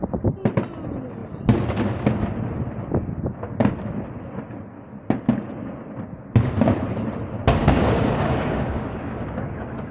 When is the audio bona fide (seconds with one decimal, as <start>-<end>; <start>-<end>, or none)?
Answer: 0.0-7.6